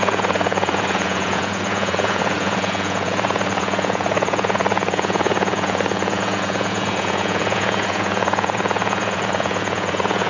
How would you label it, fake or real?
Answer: fake